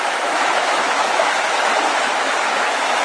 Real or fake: fake